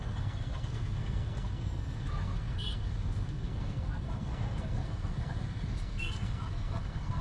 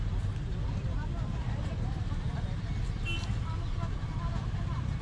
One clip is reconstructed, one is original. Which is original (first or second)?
second